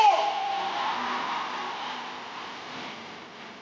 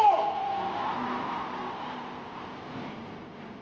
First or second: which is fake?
second